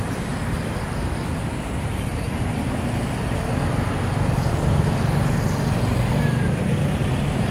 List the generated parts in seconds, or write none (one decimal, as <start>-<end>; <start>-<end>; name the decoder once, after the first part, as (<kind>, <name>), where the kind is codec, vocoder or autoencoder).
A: 0.0-2.1 (vocoder, BigVGAN v2); 6.6-7.5

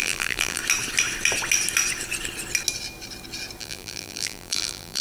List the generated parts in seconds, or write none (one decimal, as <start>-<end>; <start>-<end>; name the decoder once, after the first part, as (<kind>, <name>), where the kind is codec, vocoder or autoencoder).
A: 0.0-0.6 (vocoder, BigVGAN v2); 3.6-5.0

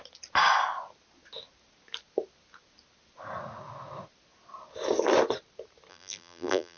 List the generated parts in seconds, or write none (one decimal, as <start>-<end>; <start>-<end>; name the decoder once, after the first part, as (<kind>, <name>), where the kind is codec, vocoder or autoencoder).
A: 5.9-6.8 (vocoder, BigVGAN v2)

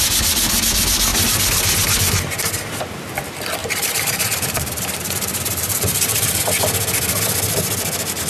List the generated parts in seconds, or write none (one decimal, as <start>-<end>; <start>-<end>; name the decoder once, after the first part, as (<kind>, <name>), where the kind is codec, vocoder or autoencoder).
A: 3.6-6.4 (vocoder, BigVGAN v2)

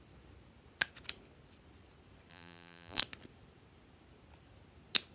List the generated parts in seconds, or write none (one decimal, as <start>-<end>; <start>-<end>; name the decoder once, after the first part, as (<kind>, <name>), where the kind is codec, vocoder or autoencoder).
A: 2.3-3.0 (vocoder, BigVGAN v2)

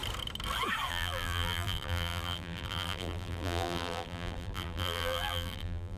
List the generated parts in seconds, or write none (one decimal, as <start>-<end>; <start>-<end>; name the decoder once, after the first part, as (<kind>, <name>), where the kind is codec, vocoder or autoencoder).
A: 0.9-6.0 (vocoder, BigVGAN v2)